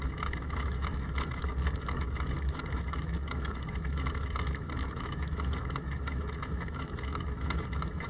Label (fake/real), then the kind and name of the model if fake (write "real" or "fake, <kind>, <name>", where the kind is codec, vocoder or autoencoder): fake, autoencoder, DAC-VAE